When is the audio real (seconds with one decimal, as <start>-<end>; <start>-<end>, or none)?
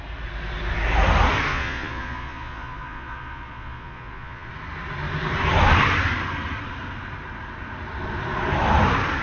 0.0-1.5; 4.5-9.2